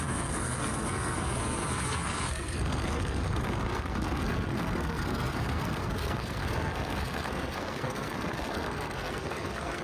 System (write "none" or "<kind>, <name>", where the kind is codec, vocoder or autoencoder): codec, SNAC